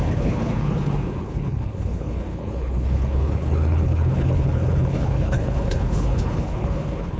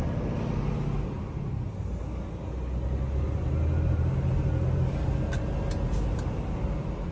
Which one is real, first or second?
second